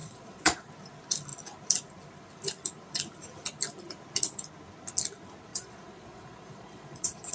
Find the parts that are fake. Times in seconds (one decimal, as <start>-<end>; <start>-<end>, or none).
0.0-0.7; 5.5-7.3